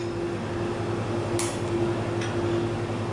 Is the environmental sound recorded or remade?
recorded